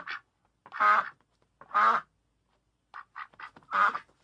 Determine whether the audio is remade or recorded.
recorded